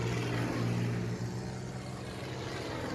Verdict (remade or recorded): recorded